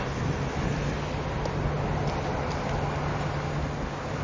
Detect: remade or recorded recorded